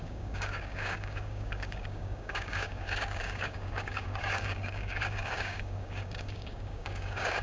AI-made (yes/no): yes